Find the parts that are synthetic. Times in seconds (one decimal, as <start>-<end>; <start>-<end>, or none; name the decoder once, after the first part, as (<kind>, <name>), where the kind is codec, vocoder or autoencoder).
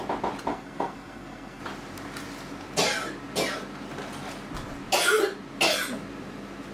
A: 0.5-1.6 (codec, SNAC)